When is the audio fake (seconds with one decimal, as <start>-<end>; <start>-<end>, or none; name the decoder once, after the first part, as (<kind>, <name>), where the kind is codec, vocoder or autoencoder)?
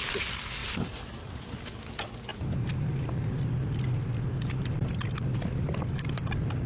0.6-1.5 (vocoder, BigVGAN v2); 2.3-6.3